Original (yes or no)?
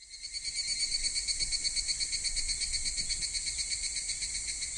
yes